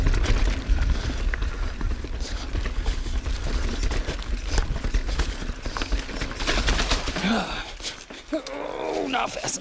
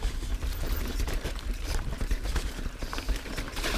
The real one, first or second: first